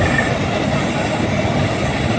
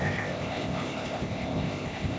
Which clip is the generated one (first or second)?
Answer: second